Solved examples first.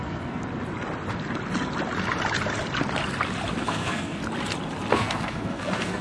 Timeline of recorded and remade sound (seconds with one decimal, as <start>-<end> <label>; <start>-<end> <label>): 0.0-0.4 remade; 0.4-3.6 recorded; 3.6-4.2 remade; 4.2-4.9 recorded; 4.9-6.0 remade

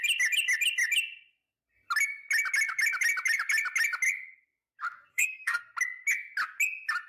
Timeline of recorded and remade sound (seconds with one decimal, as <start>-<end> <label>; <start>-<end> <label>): 0.0-5.1 recorded; 5.1-5.6 remade; 5.6-7.1 recorded

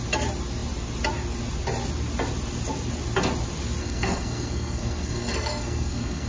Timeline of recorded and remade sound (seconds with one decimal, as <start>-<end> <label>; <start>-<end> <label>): 0.0-3.8 recorded; 3.8-6.3 remade

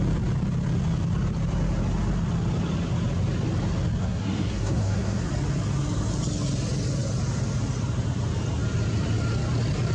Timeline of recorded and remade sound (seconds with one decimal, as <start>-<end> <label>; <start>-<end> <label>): 0.0-4.0 recorded; 4.0-5.2 remade; 5.2-9.9 recorded